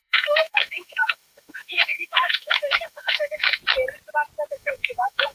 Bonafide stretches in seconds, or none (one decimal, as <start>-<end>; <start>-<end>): 3.6-4.5

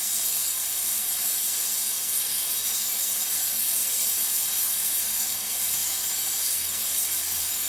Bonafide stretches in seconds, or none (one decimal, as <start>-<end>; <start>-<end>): none